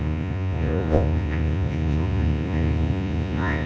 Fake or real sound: fake